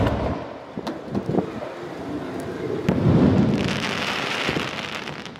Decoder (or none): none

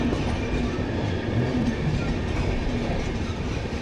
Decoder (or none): none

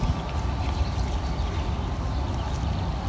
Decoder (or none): none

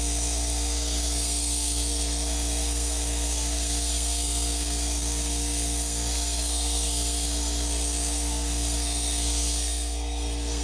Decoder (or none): codec, SNAC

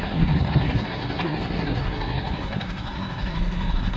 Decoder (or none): codec, SNAC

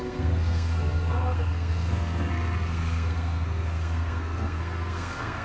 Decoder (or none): codec, SNAC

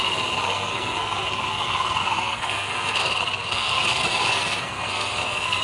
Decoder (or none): codec, SNAC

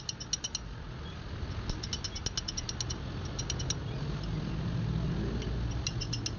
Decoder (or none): none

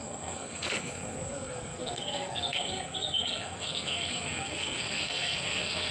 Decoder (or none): codec, SNAC